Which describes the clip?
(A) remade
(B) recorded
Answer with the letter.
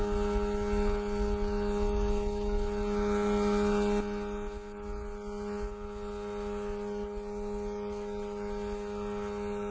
B